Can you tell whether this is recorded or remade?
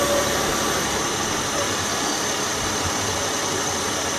recorded